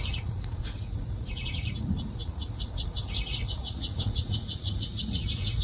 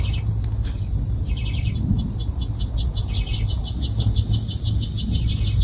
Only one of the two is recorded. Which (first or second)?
second